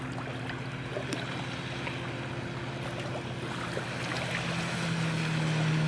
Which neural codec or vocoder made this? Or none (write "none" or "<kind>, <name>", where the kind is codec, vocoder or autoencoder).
none